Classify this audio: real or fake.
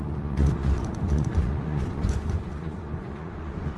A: fake